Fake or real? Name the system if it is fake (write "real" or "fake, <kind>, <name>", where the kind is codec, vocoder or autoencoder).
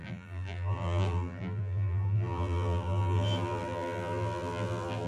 fake, vocoder, BigVGAN v2